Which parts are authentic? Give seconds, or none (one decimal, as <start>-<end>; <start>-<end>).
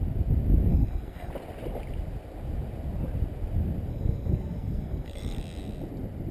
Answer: 0.0-0.7; 1.3-3.9; 5.4-6.3